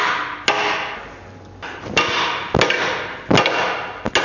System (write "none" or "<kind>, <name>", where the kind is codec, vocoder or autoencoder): none